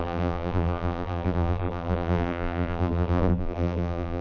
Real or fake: fake